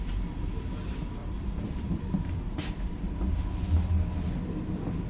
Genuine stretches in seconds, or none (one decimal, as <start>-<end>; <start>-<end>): 0.0-1.2; 3.0-5.1